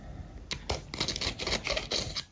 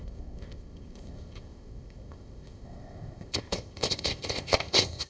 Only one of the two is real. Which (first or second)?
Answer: first